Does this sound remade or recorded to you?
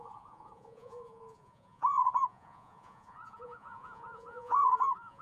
remade